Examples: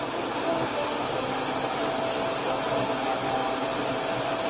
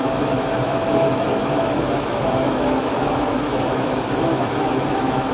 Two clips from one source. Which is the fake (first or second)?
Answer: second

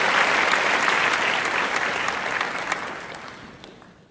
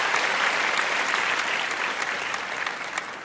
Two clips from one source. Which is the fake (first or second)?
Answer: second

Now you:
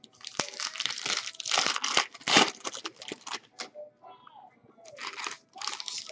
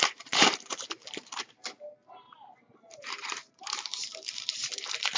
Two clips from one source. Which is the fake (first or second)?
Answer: second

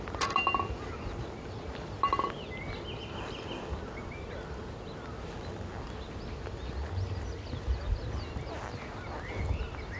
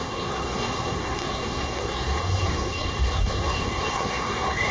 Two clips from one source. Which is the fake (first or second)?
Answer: second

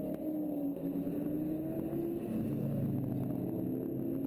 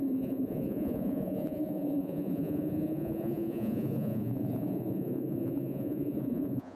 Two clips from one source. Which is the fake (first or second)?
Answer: second